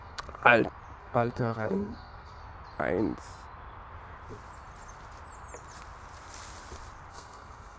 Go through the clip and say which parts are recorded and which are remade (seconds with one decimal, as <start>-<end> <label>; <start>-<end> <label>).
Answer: 0.0-0.5 remade; 0.5-1.0 recorded; 1.0-2.4 remade; 2.4-7.1 recorded; 7.1-7.8 remade